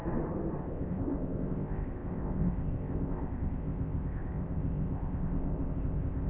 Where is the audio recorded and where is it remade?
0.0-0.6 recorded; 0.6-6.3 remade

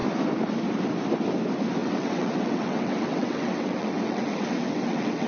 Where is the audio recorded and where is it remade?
0.0-1.8 recorded; 1.8-5.3 remade

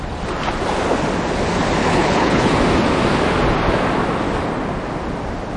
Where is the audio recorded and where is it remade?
0.0-1.8 recorded; 1.8-2.5 remade; 2.5-5.6 recorded

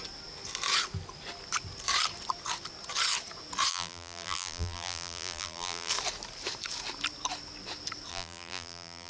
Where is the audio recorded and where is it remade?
0.0-3.7 recorded; 3.7-5.9 remade; 5.9-8.1 recorded; 8.1-9.1 remade

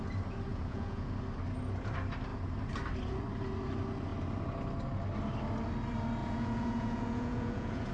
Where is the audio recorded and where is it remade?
0.0-0.5 recorded; 0.5-1.1 remade; 1.1-6.2 recorded; 6.2-7.9 remade

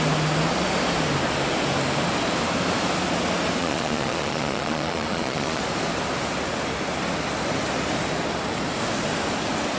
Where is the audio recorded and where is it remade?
0.0-3.6 recorded; 3.6-5.6 remade; 5.6-9.8 recorded

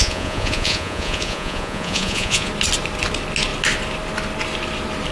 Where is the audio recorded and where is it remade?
0.0-2.5 remade; 2.5-5.1 recorded

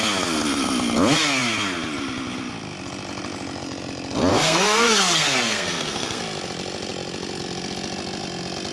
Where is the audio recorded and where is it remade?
0.0-4.3 recorded; 4.3-6.2 remade; 6.2-8.7 recorded